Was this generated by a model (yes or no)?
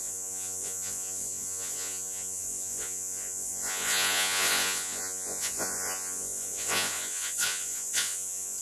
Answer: yes